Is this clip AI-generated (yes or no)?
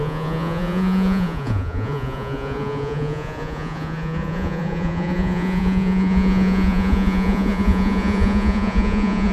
yes